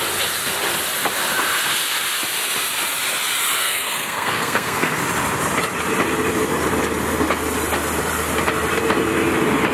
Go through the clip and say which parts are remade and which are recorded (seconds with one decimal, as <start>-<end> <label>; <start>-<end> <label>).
0.0-3.6 recorded; 3.6-5.0 remade; 5.0-9.7 recorded